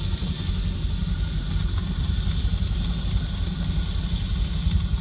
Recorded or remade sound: recorded